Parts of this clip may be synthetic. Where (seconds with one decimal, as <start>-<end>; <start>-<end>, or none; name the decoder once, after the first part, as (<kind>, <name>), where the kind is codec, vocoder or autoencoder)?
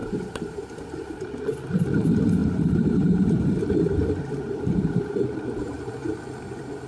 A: 0.0-1.2 (vocoder, BigVGAN v2); 2.4-5.4